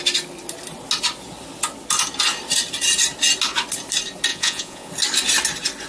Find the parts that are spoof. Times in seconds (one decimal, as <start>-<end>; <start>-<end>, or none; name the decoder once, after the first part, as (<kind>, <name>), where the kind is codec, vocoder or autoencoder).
4.3-4.9 (vocoder, Vocos)